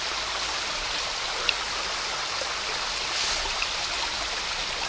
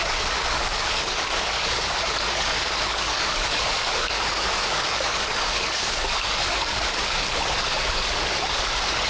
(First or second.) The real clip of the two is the first